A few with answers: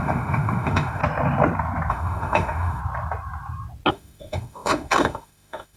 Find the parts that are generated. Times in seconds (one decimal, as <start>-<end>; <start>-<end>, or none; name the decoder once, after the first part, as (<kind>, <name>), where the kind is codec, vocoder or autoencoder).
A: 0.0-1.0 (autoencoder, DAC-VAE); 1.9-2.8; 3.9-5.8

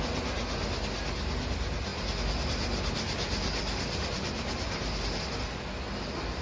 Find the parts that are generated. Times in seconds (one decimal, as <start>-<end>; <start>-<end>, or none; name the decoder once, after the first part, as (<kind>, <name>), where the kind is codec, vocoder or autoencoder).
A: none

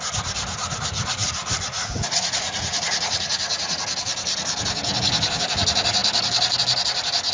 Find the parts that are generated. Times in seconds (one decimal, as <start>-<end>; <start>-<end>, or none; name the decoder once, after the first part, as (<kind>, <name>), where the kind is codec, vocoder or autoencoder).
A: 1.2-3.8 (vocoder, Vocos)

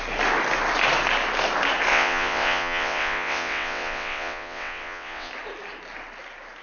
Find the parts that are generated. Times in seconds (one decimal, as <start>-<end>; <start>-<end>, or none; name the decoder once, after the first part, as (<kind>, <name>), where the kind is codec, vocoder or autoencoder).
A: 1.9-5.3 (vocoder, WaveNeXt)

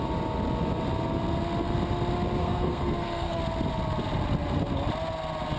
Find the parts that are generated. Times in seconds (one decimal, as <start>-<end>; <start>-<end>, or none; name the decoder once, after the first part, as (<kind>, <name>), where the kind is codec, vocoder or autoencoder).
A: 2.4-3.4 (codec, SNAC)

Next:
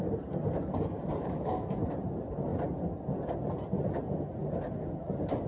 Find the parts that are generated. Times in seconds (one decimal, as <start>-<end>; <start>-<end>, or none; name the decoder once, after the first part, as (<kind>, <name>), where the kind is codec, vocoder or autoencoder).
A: 1.2-1.8 (autoencoder, DAC-VAE)

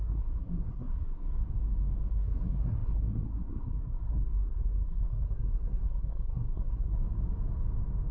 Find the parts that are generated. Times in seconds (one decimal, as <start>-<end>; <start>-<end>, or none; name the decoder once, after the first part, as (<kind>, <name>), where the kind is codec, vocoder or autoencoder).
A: 0.0-1.4 (codec, SNAC); 2.1-7.0

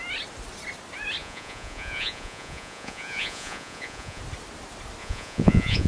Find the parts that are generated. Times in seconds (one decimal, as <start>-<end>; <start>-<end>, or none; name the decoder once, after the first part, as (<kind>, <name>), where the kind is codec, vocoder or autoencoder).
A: 1.2-4.2 (vocoder, Vocos); 5.0-5.9